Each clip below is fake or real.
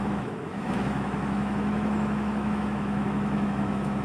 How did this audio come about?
fake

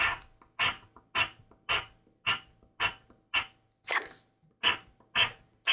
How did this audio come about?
real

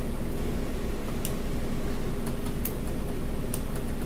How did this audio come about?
real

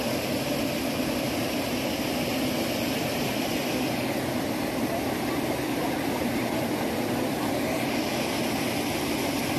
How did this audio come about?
real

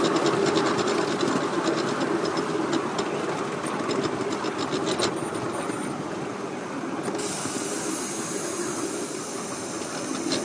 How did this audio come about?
real